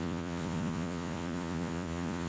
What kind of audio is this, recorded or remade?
remade